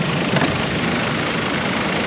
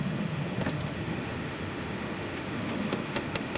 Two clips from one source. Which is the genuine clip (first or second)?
first